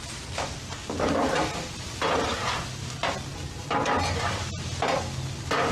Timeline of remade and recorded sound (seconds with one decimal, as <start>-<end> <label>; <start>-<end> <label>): 0.0-5.7 recorded